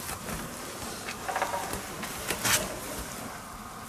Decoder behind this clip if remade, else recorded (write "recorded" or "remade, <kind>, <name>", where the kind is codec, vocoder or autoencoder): recorded